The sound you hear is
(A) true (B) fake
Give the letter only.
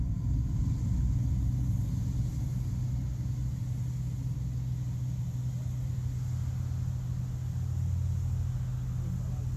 A